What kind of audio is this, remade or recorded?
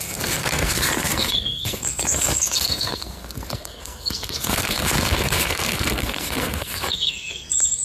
remade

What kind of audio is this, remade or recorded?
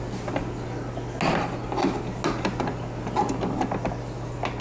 recorded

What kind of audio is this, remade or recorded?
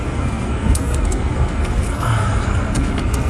remade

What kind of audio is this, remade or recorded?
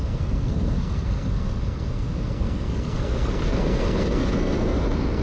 remade